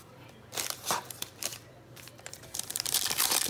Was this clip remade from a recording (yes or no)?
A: yes